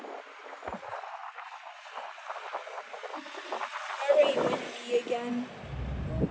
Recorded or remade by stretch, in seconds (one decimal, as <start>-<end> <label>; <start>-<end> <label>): 0.0-6.3 recorded